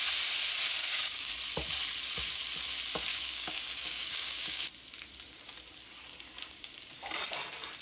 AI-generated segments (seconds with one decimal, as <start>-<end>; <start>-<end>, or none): 0.8-1.3; 3.1-4.7